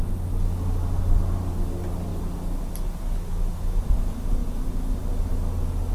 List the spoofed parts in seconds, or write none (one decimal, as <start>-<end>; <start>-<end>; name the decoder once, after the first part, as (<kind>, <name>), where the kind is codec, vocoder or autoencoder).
none